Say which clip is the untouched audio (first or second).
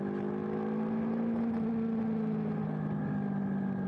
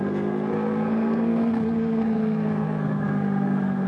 first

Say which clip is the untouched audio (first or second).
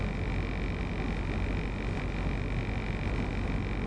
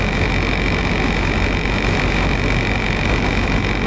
first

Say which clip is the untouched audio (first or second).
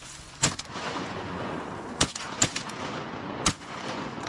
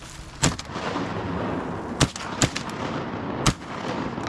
second